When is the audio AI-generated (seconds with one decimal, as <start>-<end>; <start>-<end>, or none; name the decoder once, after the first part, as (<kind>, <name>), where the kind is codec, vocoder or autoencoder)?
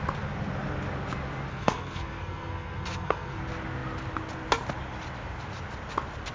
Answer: 1.5-3.4 (codec, SNAC)